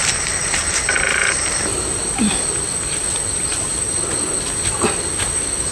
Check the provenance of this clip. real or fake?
real